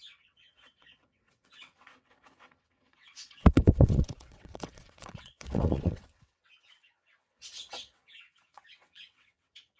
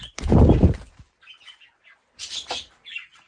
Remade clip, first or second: first